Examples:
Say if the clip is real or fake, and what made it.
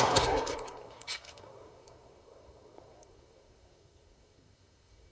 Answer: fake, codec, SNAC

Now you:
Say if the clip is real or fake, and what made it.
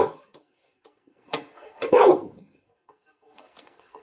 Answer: fake, codec, SNAC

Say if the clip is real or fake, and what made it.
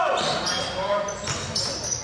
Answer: real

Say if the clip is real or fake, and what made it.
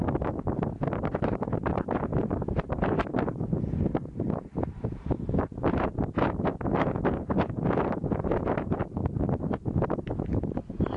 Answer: real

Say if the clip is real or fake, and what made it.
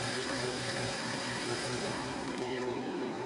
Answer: fake, codec, SNAC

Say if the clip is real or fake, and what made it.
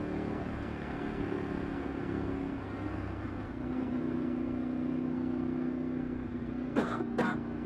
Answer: fake, codec, SNAC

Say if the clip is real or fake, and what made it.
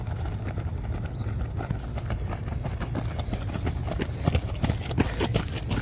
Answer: real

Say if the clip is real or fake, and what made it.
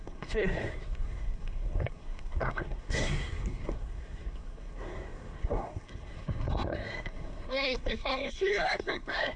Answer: fake, codec, SNAC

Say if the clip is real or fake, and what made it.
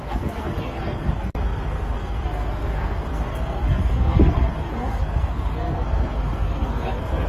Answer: fake, codec, SNAC